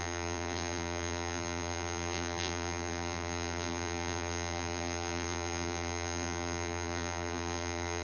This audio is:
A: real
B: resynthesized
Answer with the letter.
B